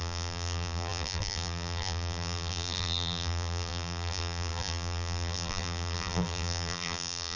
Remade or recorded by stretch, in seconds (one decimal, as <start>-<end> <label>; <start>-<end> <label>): 0.0-7.4 remade